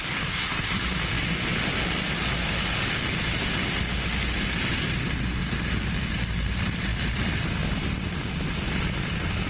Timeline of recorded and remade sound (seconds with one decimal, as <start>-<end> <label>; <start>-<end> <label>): 0.0-9.5 recorded